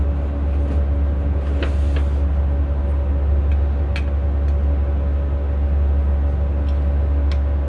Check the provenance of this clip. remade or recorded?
recorded